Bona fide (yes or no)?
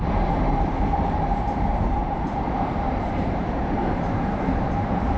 no